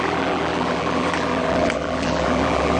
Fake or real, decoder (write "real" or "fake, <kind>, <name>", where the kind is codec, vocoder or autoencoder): fake, vocoder, BigVGAN v2